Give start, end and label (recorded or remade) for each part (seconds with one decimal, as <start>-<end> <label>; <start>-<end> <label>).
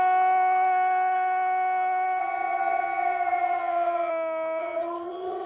0.0-2.2 recorded; 2.2-4.1 remade; 4.1-4.6 recorded; 4.6-5.5 remade